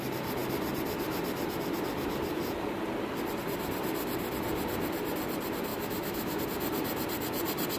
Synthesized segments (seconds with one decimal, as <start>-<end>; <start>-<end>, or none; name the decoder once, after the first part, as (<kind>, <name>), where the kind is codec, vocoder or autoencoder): 5.7-6.4 (autoencoder, DAC-VAE)